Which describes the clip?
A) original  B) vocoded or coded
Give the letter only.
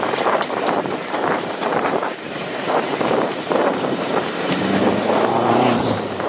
B